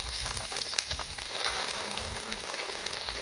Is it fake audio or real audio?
fake